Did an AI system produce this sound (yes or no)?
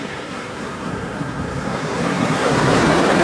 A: yes